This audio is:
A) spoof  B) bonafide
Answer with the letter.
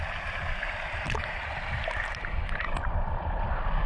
B